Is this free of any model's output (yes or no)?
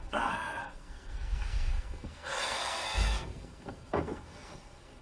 no